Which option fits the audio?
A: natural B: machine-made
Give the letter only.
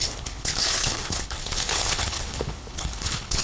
B